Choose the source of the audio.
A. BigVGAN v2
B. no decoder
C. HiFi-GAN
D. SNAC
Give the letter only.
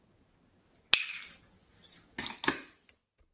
B